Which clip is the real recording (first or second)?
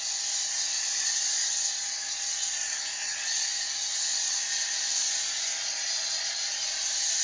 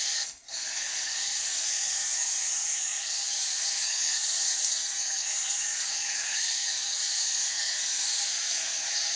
first